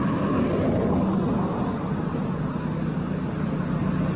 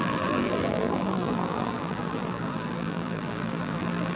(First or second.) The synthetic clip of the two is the second